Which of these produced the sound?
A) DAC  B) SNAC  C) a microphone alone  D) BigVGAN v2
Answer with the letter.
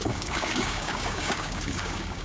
A